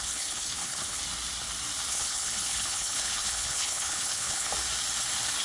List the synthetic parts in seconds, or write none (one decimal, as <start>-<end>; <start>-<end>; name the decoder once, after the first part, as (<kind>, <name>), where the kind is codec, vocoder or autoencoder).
0.0-1.0 (codec, HILCodec); 1.9-4.5